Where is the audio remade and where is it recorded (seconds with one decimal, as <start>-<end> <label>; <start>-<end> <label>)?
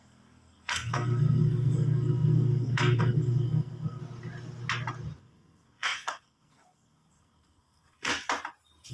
0.0-4.0 remade; 4.0-5.2 recorded; 5.2-8.1 remade; 8.1-8.9 recorded